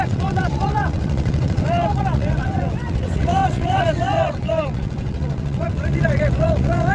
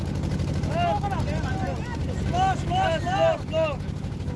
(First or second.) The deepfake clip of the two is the first